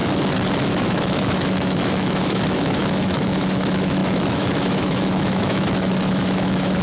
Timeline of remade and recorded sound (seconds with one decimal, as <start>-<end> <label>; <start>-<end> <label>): 0.0-0.7 recorded; 0.7-6.8 remade